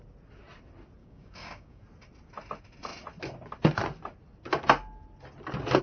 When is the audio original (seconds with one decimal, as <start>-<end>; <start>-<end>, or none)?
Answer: 0.0-1.0; 1.8-5.8